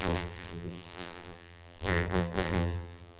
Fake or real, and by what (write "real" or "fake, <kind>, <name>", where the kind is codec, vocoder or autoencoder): fake, vocoder, BigVGAN v2